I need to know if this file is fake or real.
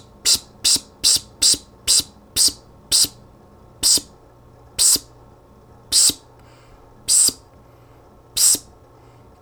real